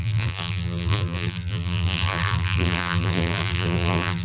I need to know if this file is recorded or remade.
remade